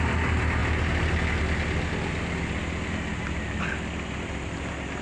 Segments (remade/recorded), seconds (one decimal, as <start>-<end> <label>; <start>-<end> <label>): 0.0-5.0 recorded